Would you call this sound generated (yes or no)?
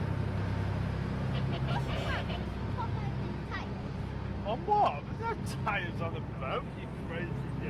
no